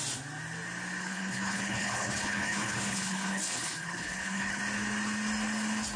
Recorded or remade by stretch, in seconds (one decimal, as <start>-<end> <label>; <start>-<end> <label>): 0.0-1.0 recorded; 1.0-4.6 remade; 4.6-6.0 recorded